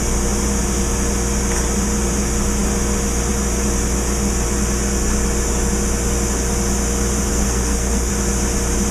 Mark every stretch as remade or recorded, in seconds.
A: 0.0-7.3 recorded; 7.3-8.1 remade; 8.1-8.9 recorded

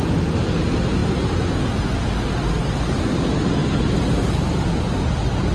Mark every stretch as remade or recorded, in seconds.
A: 0.0-5.5 recorded